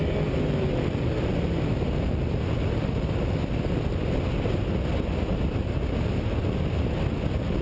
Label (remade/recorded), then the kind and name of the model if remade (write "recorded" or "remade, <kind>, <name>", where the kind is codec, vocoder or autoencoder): recorded